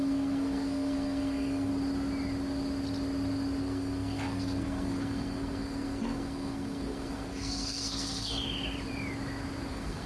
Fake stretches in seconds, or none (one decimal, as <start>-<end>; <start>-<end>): 0.0-1.7; 3.6-8.3; 9.7-10.1